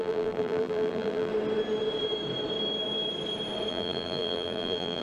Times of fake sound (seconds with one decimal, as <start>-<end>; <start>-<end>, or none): 0.0-1.3; 3.7-5.0